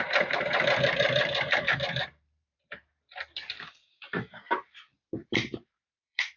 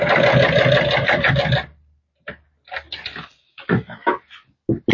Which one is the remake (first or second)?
first